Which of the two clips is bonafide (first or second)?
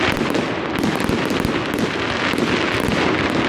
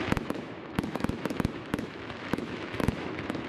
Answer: first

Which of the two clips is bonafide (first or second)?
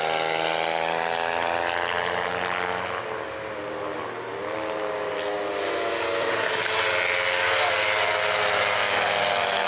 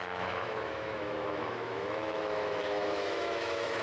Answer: first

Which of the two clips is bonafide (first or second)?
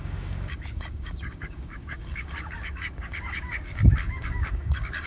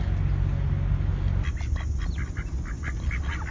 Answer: second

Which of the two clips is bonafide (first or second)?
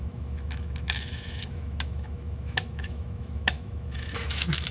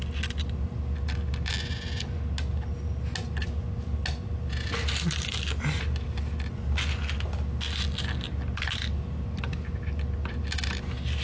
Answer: second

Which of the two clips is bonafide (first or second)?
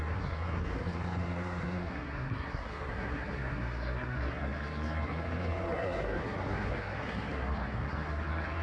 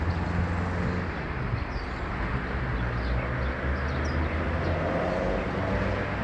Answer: second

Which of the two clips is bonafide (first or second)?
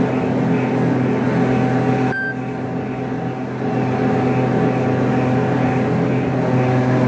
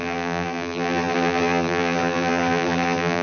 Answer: first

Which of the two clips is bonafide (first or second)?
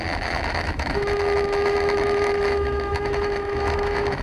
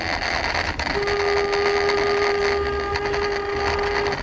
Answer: second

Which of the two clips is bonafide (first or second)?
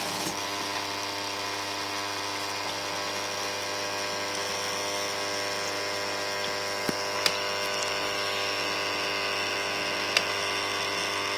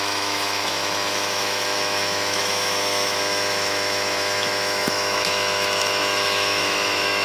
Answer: first